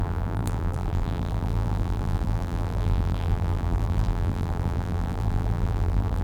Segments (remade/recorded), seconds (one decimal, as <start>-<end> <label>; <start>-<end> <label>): 0.0-6.2 remade